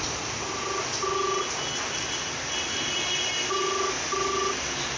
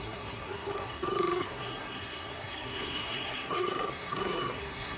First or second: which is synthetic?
second